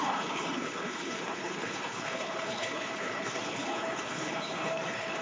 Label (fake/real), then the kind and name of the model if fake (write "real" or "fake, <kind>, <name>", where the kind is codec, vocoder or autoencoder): fake, codec, HILCodec